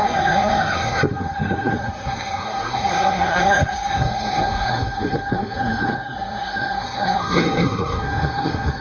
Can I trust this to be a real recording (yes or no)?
no